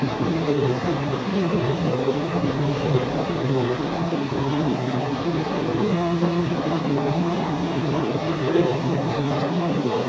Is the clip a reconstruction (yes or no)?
yes